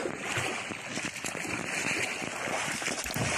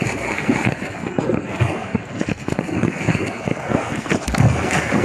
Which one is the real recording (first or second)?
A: first